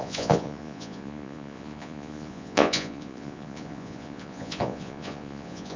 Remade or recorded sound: remade